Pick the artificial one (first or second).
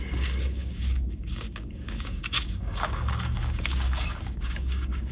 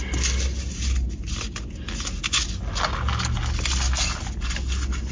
first